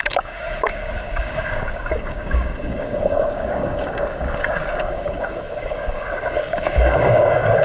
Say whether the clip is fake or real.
fake